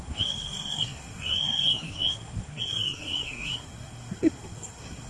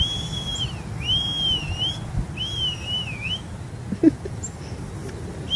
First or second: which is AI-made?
first